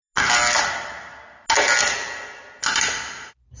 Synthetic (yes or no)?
no